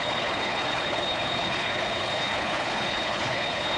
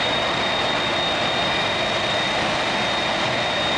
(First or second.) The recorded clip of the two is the second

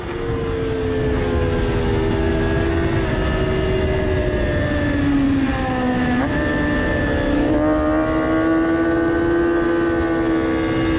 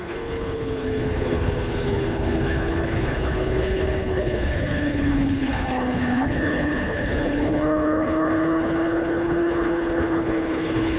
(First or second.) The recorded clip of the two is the first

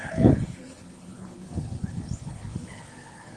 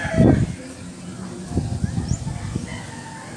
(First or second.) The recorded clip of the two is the second